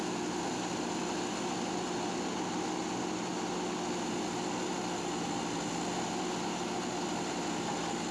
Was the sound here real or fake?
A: real